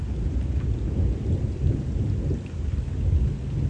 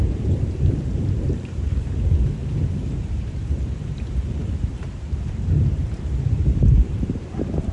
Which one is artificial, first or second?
second